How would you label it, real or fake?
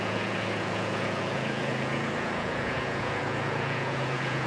fake